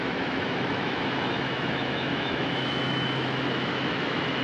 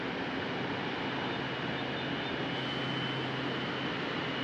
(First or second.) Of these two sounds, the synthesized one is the first